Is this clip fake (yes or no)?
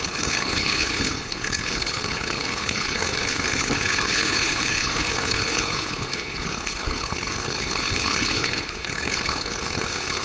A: yes